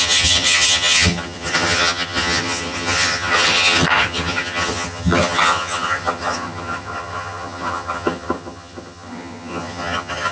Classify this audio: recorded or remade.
remade